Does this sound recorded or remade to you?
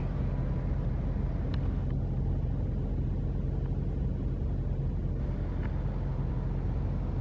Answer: recorded